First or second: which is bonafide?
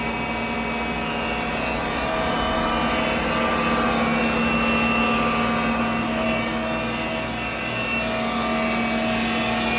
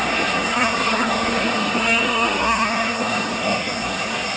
first